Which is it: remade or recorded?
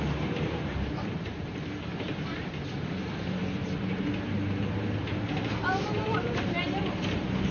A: remade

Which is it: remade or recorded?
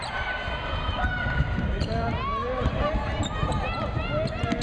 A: recorded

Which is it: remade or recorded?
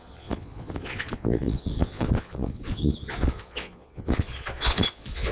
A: remade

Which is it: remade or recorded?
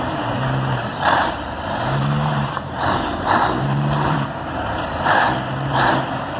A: remade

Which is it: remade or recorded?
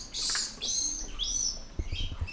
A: recorded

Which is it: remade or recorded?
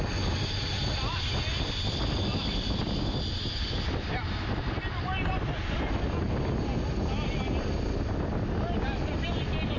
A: recorded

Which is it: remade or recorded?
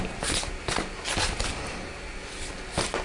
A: recorded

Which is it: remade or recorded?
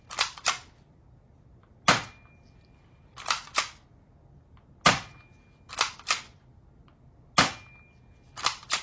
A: recorded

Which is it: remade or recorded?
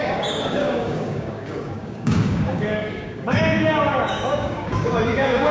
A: remade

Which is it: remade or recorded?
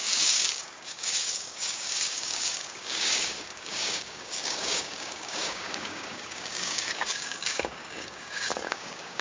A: remade